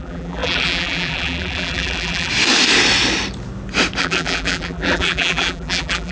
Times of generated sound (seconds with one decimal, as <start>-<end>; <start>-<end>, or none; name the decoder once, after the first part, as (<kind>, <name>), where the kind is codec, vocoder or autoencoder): 0.0-2.3 (vocoder, BigVGAN v2); 4.0-6.1